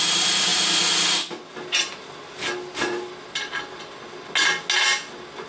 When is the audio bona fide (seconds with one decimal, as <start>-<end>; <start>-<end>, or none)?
0.0-5.5